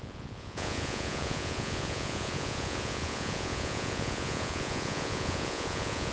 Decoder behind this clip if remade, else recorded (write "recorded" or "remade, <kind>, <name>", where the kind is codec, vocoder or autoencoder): remade, vocoder, Vocos